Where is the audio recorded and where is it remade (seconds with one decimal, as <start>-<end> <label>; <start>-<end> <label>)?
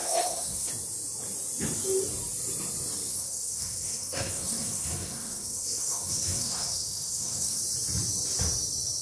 0.0-0.7 remade; 0.7-3.1 recorded; 3.1-7.6 remade; 7.6-9.0 recorded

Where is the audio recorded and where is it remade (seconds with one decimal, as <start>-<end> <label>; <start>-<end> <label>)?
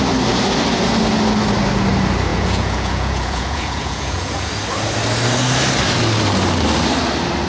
0.0-2.3 recorded; 2.3-4.5 remade; 4.5-7.5 recorded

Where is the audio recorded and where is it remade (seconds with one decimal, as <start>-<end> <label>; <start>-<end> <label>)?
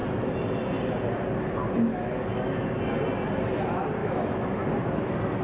0.0-1.9 recorded; 1.9-2.8 remade; 2.8-4.0 recorded; 4.0-4.6 remade; 4.6-5.4 recorded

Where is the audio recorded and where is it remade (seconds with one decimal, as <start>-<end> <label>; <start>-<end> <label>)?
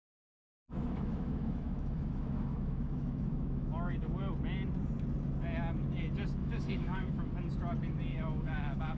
0.0-4.3 remade; 4.3-6.4 recorded; 6.4-7.3 remade; 7.3-8.1 recorded; 8.1-9.0 remade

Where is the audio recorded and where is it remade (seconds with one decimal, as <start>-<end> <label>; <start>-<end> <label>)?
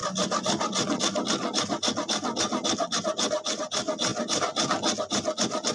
0.0-5.7 recorded